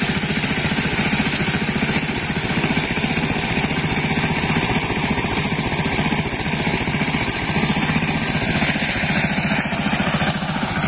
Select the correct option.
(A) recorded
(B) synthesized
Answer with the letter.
A